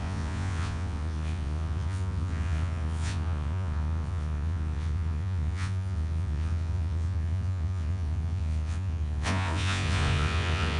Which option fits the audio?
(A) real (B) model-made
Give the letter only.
B